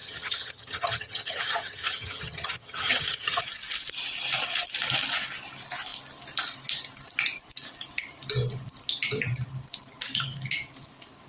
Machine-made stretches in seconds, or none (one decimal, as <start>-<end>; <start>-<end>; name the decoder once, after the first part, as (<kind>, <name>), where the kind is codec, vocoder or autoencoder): 0.0-3.4 (vocoder, HiFi-GAN)